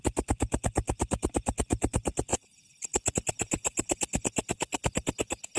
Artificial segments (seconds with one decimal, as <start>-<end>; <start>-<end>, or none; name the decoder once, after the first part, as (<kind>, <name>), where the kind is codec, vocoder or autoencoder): none